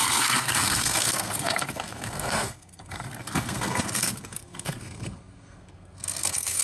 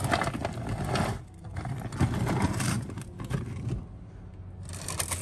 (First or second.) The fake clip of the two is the first